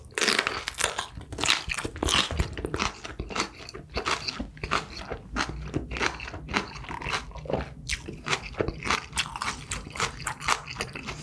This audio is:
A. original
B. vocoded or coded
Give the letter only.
A